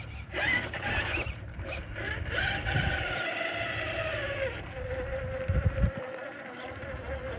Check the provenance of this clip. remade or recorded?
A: remade